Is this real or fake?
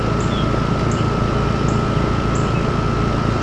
real